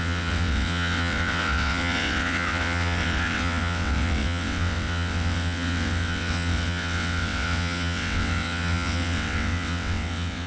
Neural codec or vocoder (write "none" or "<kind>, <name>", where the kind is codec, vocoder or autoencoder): vocoder, WaveNeXt